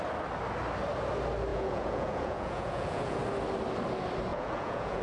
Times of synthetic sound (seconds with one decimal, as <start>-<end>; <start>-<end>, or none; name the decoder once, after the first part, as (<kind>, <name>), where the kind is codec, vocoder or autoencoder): 1.5-3.2 (vocoder, Vocos); 4.3-5.0